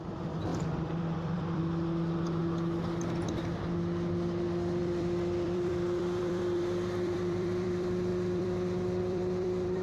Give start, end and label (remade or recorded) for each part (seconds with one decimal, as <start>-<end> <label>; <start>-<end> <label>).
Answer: 0.0-2.4 remade; 2.4-4.8 recorded; 4.8-9.8 remade